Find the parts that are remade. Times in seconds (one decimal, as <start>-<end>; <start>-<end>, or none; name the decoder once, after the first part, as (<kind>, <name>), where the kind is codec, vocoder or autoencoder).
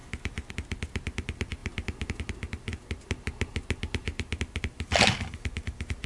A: 0.0-0.5 (vocoder, BigVGAN v2)